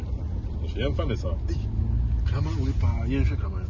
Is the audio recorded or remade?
recorded